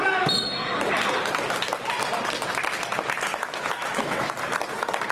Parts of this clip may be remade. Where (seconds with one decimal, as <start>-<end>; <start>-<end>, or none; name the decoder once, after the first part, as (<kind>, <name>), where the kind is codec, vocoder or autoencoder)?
3.3-4.3 (autoencoder, DAC-VAE)